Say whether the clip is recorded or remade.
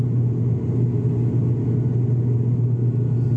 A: recorded